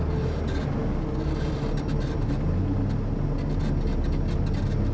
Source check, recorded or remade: recorded